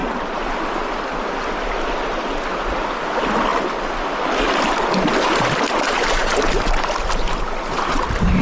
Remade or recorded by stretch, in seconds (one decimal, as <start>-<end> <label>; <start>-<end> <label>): 0.0-8.4 recorded